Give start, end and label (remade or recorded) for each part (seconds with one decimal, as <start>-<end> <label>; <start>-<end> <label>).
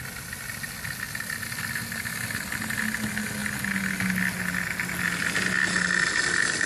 0.0-6.7 recorded